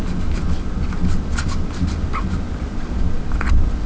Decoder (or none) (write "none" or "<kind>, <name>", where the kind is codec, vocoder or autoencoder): none